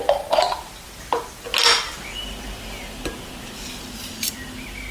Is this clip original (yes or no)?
yes